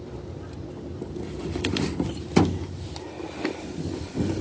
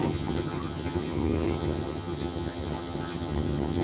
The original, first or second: first